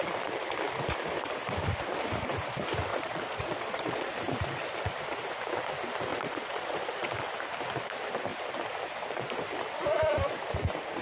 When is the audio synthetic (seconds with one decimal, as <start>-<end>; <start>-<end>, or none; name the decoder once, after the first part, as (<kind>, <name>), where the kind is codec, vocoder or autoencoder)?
2.9-4.1 (vocoder, Vocos); 6.1-7.1